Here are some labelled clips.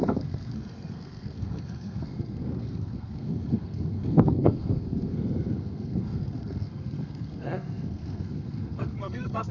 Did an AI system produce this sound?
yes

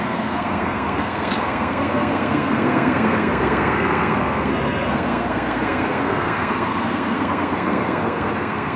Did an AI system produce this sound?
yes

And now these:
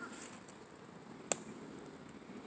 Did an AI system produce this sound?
no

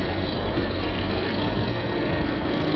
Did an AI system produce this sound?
yes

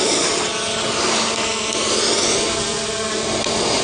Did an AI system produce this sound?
no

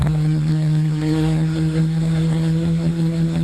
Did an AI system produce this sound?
yes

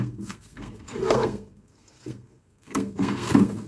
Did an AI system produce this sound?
yes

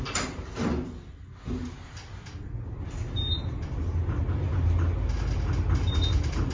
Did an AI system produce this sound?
no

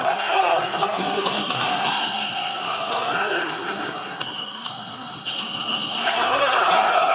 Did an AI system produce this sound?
yes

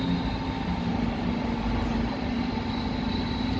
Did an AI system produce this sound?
no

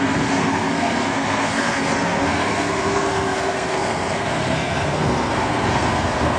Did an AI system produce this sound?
yes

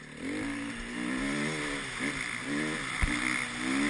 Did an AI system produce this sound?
no